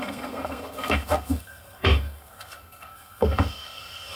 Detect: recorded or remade remade